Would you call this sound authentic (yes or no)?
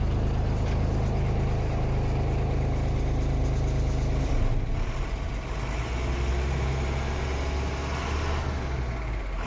yes